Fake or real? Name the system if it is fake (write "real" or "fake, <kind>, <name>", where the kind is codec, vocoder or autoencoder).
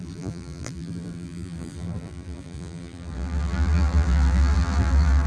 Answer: fake, vocoder, BigVGAN v2